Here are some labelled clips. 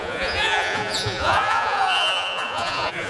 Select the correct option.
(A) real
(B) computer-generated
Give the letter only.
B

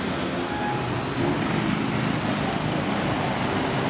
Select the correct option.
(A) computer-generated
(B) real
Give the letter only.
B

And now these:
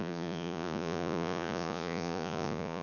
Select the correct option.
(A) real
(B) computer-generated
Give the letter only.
B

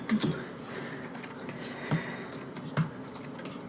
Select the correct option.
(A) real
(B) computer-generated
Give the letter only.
A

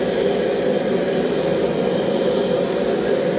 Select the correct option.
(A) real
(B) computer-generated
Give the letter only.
A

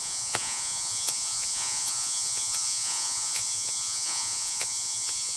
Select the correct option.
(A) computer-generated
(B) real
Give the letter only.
A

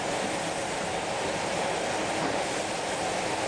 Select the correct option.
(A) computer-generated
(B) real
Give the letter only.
B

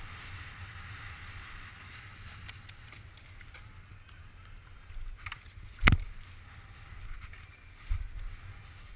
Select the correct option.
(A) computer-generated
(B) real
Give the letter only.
B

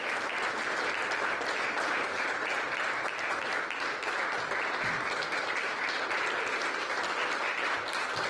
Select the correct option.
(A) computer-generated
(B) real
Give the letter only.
B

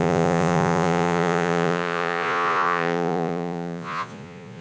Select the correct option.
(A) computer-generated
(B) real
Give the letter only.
A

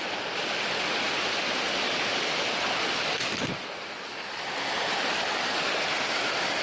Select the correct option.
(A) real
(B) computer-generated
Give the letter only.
A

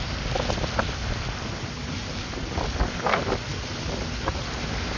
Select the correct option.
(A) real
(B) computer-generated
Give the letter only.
A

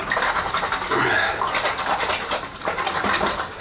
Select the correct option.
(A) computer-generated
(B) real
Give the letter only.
B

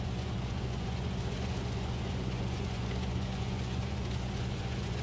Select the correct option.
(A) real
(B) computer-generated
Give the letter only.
B